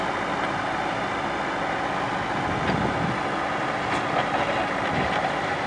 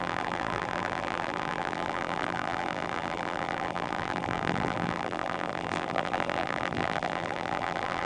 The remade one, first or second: second